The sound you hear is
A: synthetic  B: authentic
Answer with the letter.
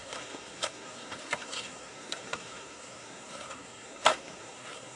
A